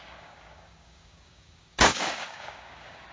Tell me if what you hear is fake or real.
fake